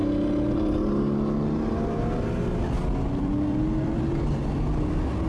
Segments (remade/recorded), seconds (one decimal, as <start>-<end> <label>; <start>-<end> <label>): 0.0-3.2 recorded; 3.2-5.3 remade